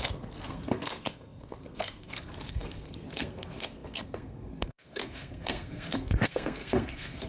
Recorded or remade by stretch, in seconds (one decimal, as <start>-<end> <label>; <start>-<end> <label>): 0.0-7.3 remade